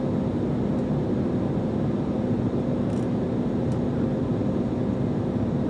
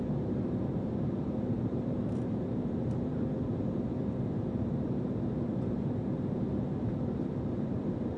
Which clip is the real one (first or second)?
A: first